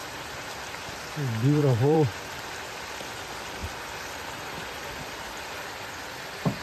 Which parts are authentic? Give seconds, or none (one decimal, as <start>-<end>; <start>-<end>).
0.5-1.6; 2.3-6.6